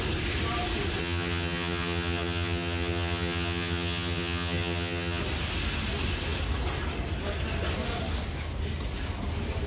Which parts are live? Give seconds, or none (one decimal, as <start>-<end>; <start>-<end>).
0.0-1.0; 5.2-9.7